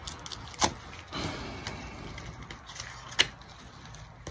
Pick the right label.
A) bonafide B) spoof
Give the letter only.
A